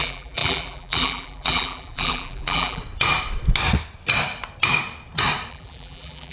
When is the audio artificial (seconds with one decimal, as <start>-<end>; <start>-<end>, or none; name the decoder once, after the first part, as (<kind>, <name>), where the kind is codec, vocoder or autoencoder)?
0.0-2.8 (vocoder, BigVGAN v2); 5.5-6.3